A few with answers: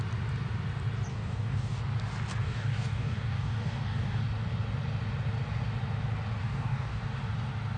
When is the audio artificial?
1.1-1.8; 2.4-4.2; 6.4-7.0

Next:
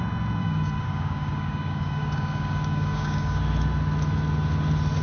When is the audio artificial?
0.4-3.4

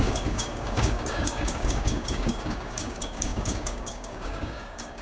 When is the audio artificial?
0.0-5.0

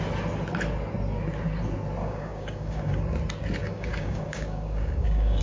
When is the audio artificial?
2.0-3.0; 3.6-5.4

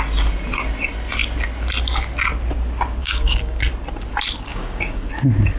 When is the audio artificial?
3.0-3.6; 4.5-5.1

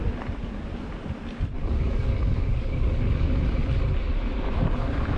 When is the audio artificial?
1.6-3.3